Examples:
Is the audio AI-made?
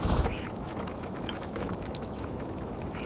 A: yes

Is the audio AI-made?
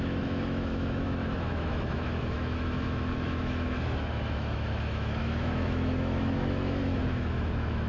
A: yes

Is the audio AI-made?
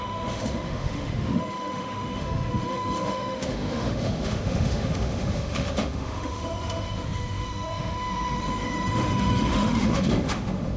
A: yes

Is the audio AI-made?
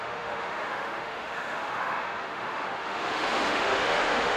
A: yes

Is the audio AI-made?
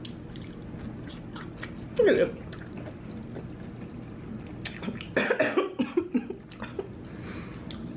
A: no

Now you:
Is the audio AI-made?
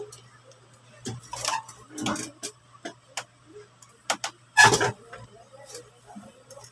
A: no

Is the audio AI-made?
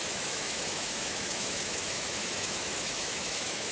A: yes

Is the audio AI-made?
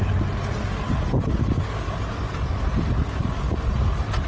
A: no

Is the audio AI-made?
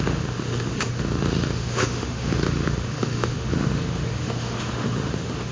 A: yes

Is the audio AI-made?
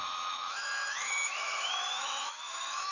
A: yes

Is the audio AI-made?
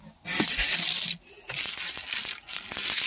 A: no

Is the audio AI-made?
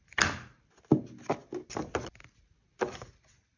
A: no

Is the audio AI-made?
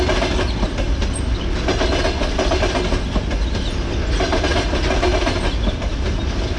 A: no